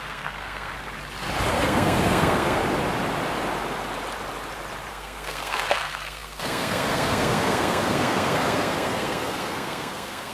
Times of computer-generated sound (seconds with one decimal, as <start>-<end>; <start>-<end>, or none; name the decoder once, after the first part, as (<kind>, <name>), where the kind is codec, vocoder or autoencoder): 0.0-0.7 (codec, SNAC); 1.5-2.6; 4.9-10.3